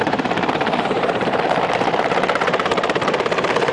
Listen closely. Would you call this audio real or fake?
fake